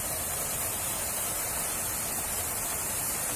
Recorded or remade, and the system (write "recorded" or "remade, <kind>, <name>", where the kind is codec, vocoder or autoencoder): remade, vocoder, BigVGAN v2